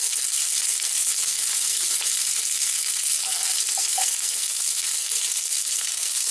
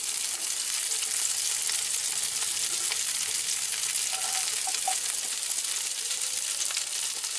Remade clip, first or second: first